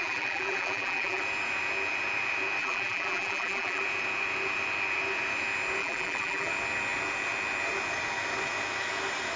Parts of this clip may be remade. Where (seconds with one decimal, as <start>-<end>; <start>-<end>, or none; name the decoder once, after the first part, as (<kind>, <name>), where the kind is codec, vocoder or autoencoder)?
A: 0.0-1.2 (vocoder, BigVGAN v2); 2.6-3.8; 5.8-6.5